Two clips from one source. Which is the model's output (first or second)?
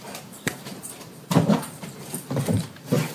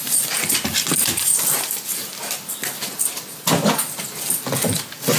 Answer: first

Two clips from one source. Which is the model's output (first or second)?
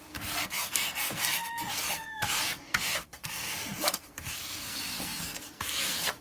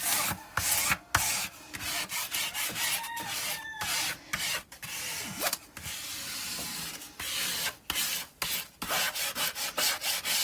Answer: first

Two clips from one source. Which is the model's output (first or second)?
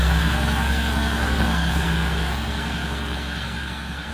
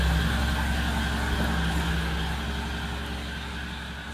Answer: first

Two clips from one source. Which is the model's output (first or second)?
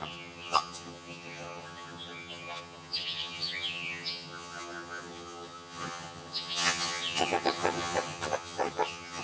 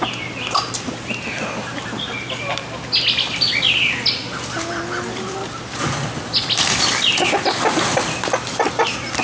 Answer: first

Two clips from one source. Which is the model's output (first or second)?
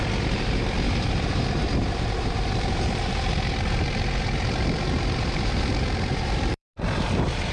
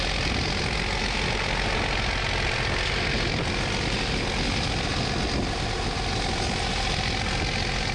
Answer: first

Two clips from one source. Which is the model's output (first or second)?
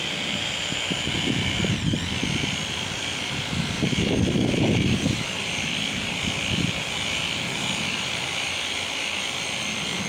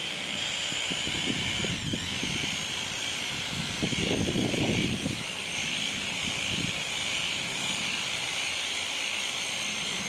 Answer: second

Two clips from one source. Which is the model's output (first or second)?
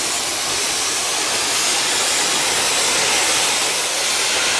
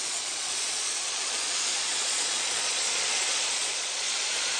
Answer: second